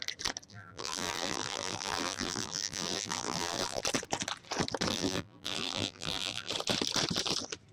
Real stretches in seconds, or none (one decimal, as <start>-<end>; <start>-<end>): 0.0-0.5; 3.8-4.9; 6.5-7.7